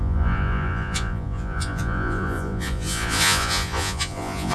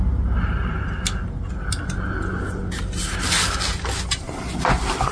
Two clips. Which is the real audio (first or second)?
second